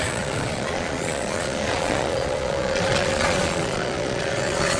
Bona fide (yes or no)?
no